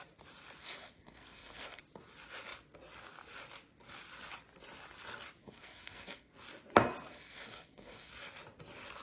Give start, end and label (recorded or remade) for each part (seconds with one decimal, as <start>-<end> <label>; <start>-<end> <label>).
0.0-0.6 recorded; 0.6-1.8 remade; 1.8-5.4 recorded; 5.4-6.3 remade; 6.3-7.1 recorded; 7.1-8.1 remade; 8.1-9.0 recorded